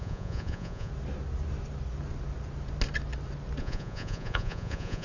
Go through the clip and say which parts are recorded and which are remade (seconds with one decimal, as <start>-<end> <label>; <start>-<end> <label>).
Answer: 0.0-0.9 remade; 0.9-3.6 recorded; 3.6-5.0 remade